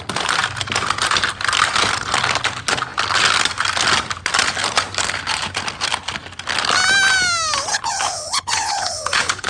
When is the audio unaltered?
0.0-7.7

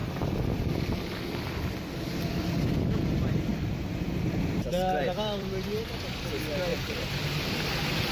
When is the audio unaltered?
0.0-3.5; 5.5-6.7; 7.5-8.1

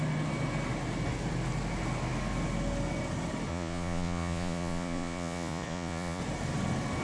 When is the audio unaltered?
0.0-3.5; 6.2-7.0